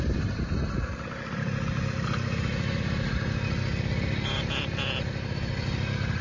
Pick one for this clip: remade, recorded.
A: recorded